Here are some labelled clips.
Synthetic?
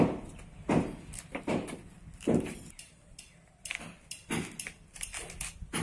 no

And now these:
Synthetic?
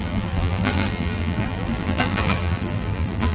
yes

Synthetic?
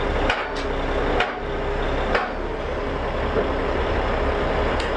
no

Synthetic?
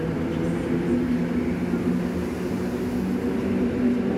no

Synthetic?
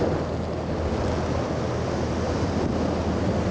no